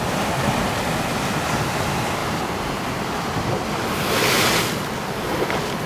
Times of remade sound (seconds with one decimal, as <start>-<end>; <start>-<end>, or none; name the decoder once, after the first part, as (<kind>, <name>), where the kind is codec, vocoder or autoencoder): none

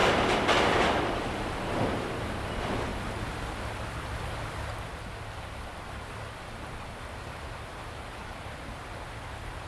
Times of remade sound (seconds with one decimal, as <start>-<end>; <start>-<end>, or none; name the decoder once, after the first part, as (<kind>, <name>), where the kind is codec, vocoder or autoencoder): 8.2-8.8 (vocoder, BigVGAN v2)

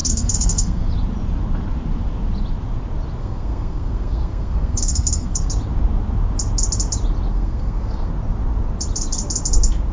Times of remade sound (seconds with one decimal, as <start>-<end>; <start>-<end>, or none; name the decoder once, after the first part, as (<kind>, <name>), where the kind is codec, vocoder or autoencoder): 0.0-0.9 (codec, SNAC); 3.2-5.5; 7.3-8.1

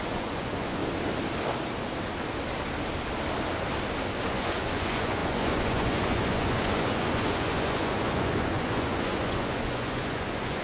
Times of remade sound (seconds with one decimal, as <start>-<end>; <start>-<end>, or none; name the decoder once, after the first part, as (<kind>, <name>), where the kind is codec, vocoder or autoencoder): 0.0-0.8 (vocoder, Vocos); 4.3-10.6

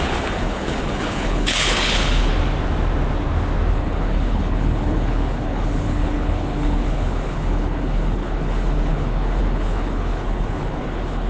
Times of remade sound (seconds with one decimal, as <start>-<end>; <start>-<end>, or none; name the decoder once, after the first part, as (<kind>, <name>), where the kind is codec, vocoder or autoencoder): 0.0-2.3 (codec, HILCodec); 3.7-11.3

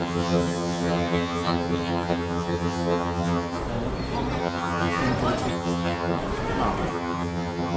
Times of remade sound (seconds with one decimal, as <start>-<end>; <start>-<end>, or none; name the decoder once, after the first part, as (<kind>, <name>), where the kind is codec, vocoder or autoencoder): 0.0-3.6 (vocoder, HiFi-GAN); 4.4-5.0; 5.5-6.2; 6.9-7.8

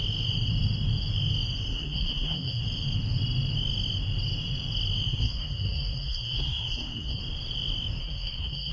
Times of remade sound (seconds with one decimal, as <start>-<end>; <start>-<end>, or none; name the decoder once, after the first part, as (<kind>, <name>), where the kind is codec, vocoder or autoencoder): 1.7-2.6 (codec, SNAC); 5.1-7.2; 8.0-8.7

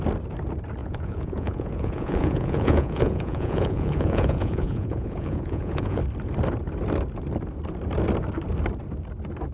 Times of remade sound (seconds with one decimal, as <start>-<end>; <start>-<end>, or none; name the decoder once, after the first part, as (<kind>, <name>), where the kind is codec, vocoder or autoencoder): 0.8-6.0 (vocoder, Vocos)